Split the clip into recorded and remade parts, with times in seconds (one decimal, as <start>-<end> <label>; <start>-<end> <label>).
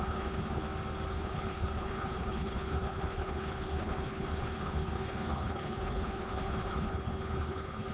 0.0-0.6 remade; 0.6-1.1 recorded; 1.1-7.9 remade